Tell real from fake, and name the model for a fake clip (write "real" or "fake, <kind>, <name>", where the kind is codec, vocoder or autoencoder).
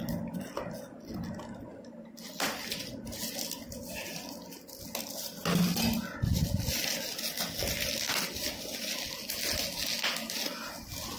real